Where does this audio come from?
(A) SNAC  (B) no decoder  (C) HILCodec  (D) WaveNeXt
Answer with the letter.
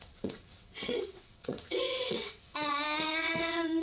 D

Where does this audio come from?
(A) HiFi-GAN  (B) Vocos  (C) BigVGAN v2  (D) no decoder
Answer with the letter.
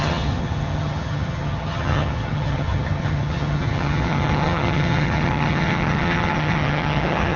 A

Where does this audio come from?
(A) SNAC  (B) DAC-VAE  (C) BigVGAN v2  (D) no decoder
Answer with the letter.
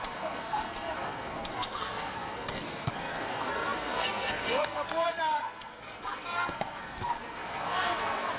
A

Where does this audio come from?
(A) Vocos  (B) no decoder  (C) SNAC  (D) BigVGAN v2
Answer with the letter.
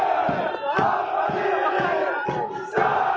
B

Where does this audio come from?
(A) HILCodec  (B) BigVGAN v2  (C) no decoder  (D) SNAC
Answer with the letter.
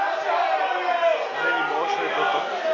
C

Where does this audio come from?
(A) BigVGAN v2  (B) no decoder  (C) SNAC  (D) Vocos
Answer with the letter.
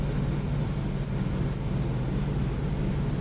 B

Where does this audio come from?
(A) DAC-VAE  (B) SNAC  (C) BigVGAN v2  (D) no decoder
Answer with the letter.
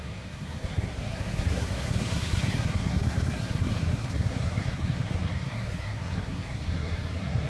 B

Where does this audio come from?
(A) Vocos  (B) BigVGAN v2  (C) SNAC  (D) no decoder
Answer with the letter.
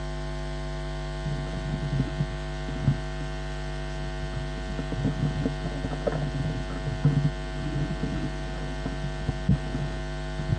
D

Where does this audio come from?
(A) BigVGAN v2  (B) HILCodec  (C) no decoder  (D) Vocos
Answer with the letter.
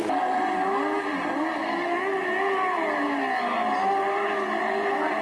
C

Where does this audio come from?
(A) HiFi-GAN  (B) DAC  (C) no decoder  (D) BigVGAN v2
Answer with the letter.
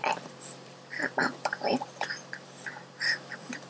D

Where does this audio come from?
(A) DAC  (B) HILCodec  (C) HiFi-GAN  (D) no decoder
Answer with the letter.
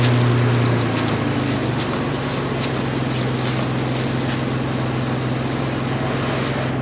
D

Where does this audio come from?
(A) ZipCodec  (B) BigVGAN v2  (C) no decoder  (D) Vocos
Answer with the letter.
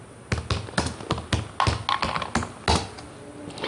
C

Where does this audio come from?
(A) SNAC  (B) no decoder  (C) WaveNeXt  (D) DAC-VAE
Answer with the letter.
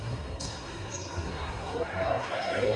A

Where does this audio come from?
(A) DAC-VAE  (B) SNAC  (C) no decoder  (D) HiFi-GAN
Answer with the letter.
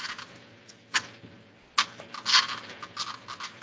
C